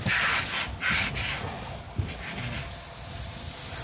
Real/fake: real